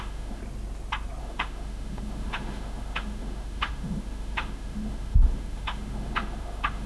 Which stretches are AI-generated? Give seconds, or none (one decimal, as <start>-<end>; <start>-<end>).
0.0-0.4; 1.2-6.9